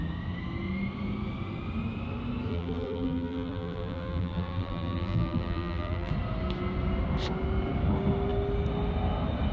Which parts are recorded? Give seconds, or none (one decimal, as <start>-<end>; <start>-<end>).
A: 0.0-2.5; 6.1-9.5